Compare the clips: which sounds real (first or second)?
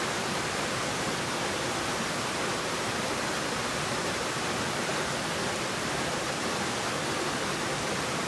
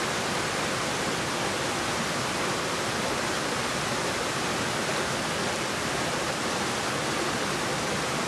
second